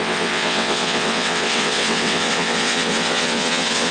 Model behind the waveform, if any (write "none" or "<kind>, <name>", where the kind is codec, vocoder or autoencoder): vocoder, WaveNeXt